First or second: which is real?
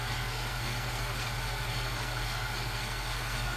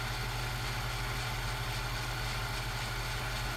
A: second